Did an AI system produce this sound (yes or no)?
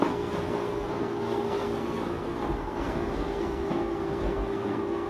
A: yes